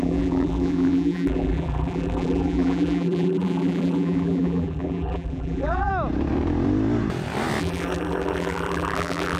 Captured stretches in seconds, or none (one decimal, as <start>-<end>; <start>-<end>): 5.9-7.6